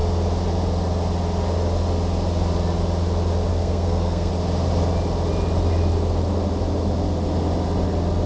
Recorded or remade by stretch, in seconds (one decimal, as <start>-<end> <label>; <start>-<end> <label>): 0.0-3.5 recorded; 3.5-4.3 remade; 4.3-8.3 recorded